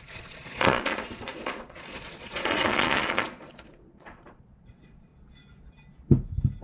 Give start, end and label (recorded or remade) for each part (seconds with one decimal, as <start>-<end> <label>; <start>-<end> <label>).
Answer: 0.0-5.1 remade; 5.1-6.6 recorded